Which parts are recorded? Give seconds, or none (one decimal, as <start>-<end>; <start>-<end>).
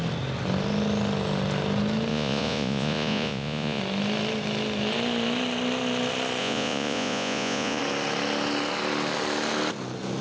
0.0-2.1; 3.8-6.4; 7.8-10.2